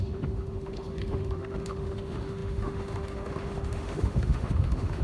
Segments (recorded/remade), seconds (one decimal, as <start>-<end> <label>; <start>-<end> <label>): 0.0-5.0 remade